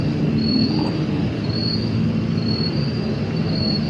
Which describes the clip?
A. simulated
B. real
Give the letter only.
B